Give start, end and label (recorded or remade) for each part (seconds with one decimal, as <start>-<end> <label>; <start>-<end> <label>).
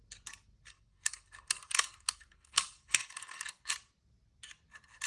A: 0.0-0.7 recorded; 0.7-3.7 remade; 3.7-5.1 recorded